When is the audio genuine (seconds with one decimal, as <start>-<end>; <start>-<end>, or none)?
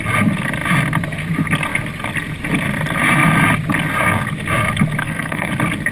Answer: 0.0-5.0; 5.5-5.9